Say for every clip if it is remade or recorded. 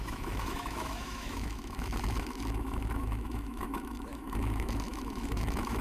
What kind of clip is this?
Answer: remade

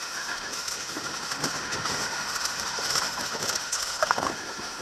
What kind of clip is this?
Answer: remade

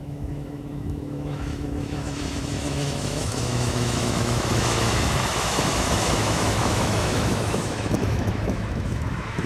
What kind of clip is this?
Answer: remade